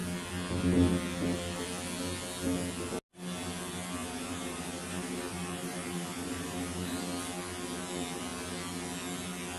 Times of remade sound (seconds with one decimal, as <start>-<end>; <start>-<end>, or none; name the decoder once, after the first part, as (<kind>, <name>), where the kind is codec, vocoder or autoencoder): 4.0-7.0 (vocoder, BigVGAN v2)